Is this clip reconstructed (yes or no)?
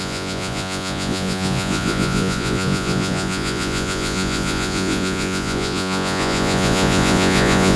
yes